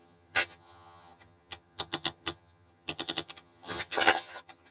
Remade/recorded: remade